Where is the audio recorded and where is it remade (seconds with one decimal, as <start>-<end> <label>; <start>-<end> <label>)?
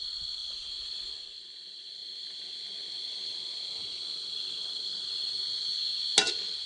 0.0-6.7 recorded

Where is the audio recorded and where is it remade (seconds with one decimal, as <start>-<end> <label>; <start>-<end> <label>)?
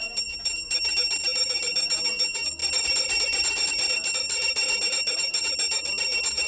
0.0-6.5 recorded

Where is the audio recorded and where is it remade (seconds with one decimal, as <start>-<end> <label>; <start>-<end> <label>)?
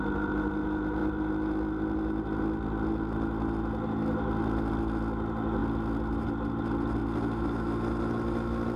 0.0-8.8 recorded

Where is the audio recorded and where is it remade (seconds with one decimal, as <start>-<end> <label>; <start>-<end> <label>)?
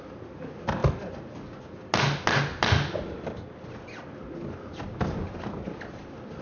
0.0-6.4 recorded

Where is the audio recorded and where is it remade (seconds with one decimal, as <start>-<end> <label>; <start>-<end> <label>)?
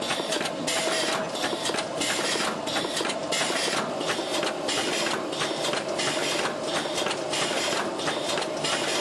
0.0-9.0 recorded